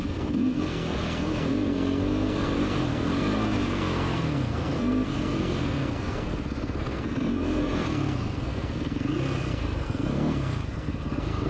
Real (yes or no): no